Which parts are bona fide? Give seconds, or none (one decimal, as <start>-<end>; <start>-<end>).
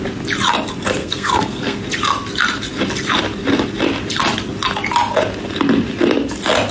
0.0-1.0; 1.8-6.7